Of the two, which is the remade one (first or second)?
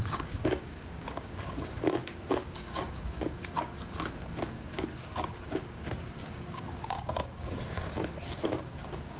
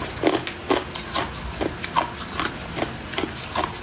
first